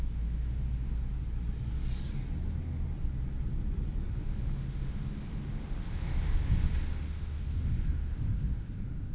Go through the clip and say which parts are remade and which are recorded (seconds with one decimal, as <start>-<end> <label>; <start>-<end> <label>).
0.0-1.1 remade; 1.1-4.2 recorded; 4.2-9.1 remade